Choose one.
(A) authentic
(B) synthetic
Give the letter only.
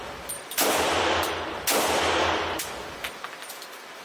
B